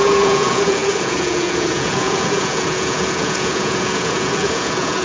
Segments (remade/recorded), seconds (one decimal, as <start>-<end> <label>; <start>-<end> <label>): 0.0-5.0 remade